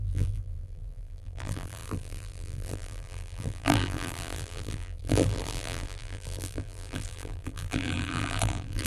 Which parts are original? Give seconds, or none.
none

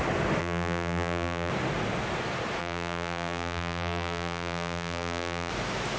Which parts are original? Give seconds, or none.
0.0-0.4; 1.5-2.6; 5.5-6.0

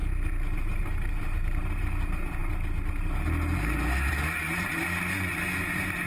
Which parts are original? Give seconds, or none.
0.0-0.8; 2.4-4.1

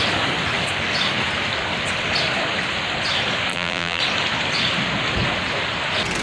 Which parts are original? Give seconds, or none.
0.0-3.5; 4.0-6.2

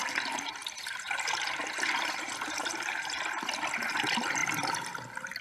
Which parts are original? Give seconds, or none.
3.2-5.4